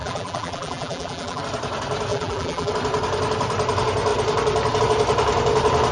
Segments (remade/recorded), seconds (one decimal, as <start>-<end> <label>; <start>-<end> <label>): 0.0-1.4 remade; 1.4-2.1 recorded; 2.1-2.7 remade; 2.7-5.9 recorded